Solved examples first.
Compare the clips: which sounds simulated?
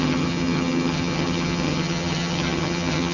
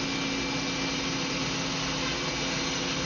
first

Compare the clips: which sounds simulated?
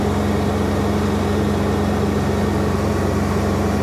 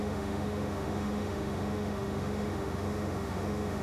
second